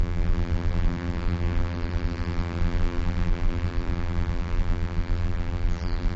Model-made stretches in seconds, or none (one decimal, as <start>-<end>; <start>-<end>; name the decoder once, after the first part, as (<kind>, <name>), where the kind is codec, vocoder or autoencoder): 0.0-6.2 (vocoder, BigVGAN v2)

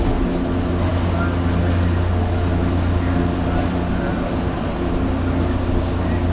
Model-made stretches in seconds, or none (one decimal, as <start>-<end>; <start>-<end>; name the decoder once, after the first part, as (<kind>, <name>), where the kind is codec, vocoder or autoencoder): none